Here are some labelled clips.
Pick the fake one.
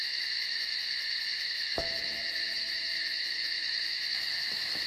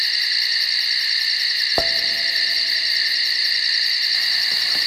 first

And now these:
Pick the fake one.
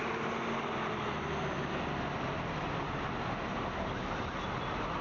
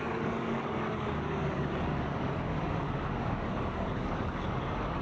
second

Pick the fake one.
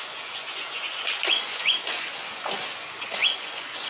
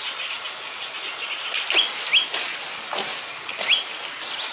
first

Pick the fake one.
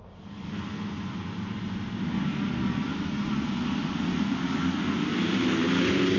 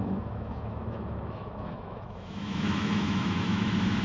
second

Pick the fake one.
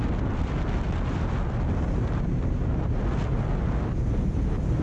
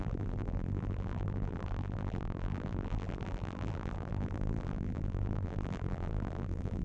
second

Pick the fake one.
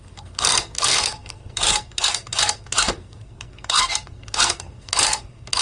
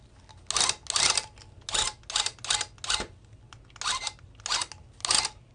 first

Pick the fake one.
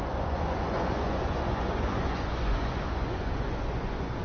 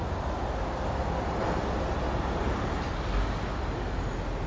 first